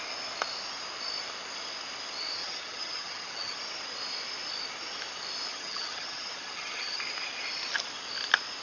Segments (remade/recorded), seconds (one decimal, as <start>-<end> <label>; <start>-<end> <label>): 0.0-2.4 recorded; 2.4-3.6 remade; 3.6-5.5 recorded; 5.5-7.0 remade; 7.0-8.6 recorded